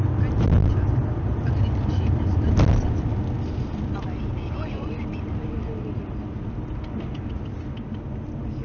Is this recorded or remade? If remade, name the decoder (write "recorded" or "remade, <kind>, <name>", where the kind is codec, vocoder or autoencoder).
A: recorded